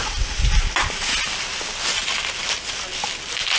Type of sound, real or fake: real